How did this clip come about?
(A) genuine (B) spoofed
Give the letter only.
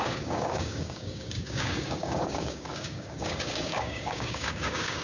B